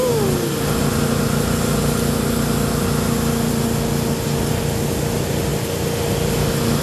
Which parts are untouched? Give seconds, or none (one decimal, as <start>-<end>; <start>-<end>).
0.0-6.8

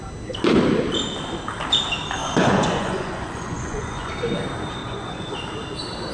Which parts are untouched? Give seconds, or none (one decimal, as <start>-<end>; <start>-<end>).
0.0-2.2; 4.1-4.8; 5.3-6.1

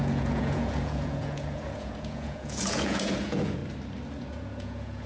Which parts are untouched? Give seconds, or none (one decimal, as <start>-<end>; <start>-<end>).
3.6-4.2

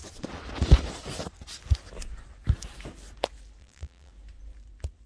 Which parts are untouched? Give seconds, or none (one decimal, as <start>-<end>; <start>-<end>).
0.0-3.6; 4.1-5.1

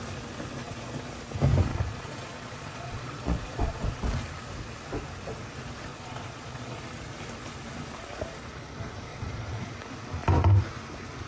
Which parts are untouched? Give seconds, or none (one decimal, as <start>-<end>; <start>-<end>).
0.0-0.6; 1.1-1.7; 4.0-5.9; 6.8-9.1; 9.7-11.3